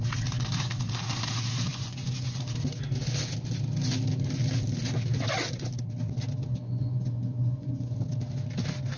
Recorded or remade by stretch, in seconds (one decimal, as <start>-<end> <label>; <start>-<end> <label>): 0.0-1.7 recorded; 1.7-2.4 remade; 2.4-6.5 recorded; 6.5-8.0 remade; 8.0-9.0 recorded